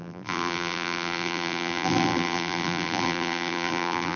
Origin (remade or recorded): remade